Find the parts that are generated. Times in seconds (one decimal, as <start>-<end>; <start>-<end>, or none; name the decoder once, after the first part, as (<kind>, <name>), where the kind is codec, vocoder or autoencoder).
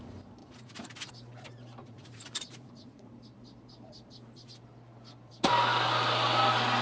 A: 0.4-1.1 (vocoder, Vocos); 1.8-3.1